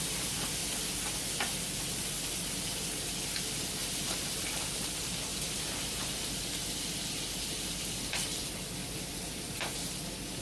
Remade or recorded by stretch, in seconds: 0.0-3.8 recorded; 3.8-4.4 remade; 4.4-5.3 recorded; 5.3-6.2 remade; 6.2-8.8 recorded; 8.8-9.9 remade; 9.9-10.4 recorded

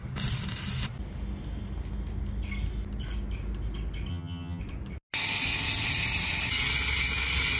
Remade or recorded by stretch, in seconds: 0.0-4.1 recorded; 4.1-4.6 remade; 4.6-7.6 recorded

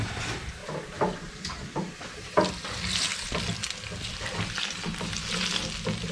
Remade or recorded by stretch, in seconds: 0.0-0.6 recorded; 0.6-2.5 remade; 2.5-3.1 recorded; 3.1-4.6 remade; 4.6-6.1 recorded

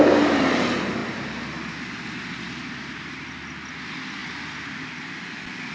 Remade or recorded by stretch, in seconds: 0.0-5.7 recorded